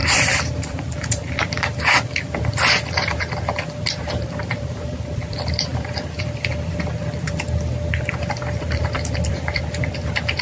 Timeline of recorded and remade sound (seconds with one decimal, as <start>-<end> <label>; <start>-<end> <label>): 0.0-10.4 remade